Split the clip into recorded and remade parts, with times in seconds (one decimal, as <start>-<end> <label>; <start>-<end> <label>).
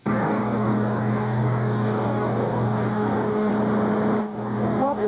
0.0-3.5 remade; 3.5-4.2 recorded; 4.2-5.1 remade